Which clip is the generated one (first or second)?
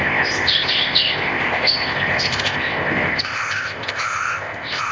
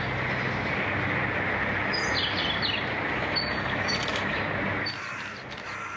first